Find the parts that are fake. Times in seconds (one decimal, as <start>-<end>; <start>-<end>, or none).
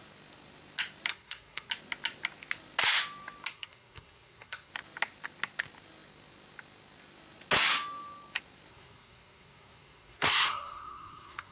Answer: 1.1-1.7; 3.5-4.7; 8.7-11.5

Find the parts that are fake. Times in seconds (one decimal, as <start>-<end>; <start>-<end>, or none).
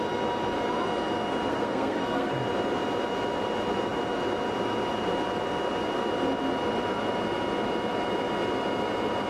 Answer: 1.5-2.3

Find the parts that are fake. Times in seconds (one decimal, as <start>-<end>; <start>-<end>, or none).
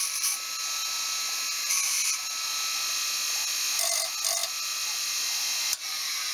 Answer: none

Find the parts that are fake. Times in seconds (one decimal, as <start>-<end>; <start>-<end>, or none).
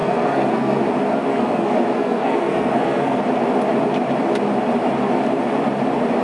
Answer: 0.0-0.8; 1.3-3.2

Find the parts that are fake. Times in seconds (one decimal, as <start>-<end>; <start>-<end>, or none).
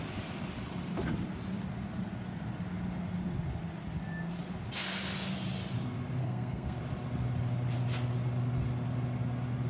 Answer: 6.2-6.8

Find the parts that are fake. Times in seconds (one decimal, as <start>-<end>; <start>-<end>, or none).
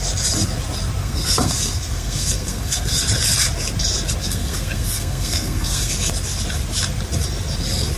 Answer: 1.0-3.0; 4.2-5.9